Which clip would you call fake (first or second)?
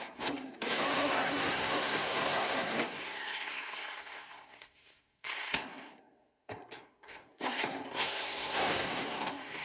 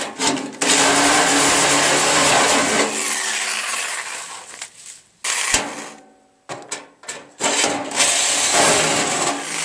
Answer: first